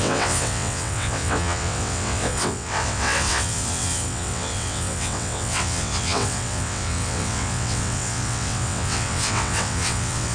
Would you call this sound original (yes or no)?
no